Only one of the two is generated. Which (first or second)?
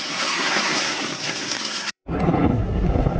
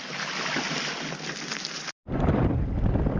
first